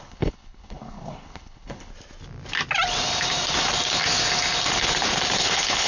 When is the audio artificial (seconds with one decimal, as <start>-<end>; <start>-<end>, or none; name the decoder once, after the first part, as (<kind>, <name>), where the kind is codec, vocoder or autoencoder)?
0.0-1.9 (codec, HILCodec); 5.4-5.9